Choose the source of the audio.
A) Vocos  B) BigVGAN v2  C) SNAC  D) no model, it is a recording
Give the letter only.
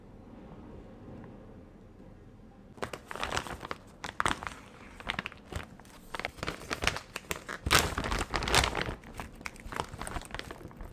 D